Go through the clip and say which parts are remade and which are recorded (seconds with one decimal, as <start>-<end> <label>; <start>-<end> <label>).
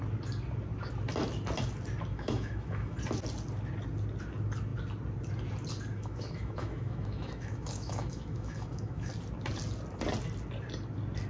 0.0-2.1 recorded; 2.1-3.0 remade; 3.0-5.9 recorded; 5.9-9.1 remade; 9.1-11.3 recorded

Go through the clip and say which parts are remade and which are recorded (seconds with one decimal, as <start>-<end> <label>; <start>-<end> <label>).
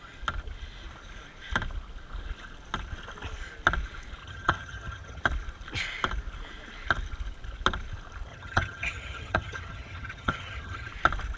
0.0-4.2 recorded; 4.2-5.2 remade; 5.2-8.3 recorded; 8.3-10.9 remade; 10.9-11.4 recorded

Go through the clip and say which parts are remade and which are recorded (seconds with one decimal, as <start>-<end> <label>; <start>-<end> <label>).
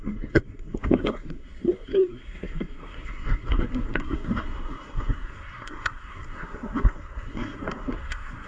0.0-8.5 remade